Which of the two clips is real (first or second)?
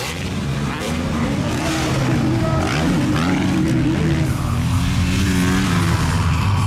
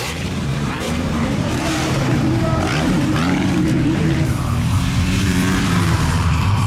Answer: first